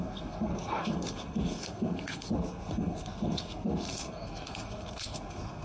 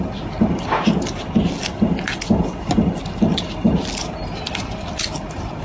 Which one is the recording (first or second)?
second